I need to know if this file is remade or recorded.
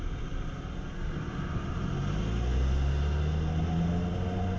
recorded